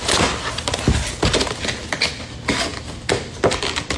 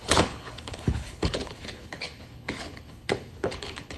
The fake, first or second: second